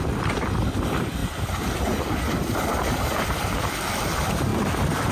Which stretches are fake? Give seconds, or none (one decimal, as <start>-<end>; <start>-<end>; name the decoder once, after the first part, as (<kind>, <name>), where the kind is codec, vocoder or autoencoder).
0.0-1.2 (vocoder, BigVGAN v2); 3.2-4.5

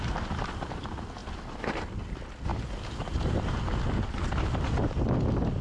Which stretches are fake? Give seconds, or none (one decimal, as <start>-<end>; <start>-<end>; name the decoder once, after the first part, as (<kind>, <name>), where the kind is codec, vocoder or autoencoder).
none

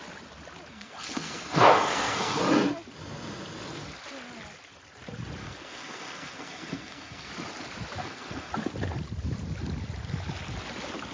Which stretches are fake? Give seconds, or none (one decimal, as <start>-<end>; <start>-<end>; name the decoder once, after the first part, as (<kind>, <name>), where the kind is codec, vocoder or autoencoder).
0.7-2.4 (codec, SNAC); 5.4-7.3; 8.0-8.5

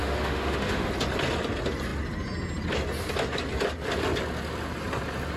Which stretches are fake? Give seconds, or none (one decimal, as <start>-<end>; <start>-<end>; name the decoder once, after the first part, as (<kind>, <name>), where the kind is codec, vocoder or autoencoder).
0.0-0.9 (autoencoder, DAC-VAE)

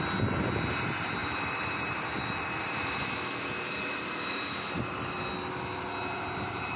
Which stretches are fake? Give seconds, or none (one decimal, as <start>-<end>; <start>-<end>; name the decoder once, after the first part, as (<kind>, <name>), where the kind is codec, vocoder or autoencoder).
1.2-5.3 (vocoder, BigVGAN v2)

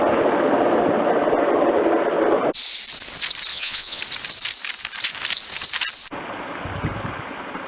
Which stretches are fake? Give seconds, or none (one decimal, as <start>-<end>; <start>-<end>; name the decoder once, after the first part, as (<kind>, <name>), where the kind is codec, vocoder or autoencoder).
3.5-4.0 (vocoder, Vocos)

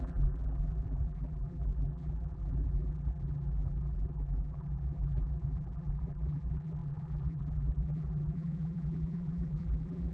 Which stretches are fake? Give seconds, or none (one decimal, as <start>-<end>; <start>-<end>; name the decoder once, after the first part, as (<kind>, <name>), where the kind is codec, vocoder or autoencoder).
0.0-10.1 (vocoder, BigVGAN v2)